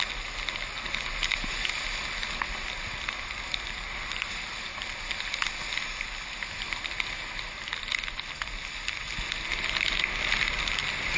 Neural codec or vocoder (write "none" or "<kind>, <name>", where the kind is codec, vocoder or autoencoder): none